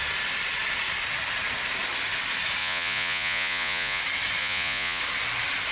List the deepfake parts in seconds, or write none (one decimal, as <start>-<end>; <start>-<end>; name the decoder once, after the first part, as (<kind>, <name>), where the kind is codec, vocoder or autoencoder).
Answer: 2.6-4.0 (vocoder, Vocos); 4.4-5.0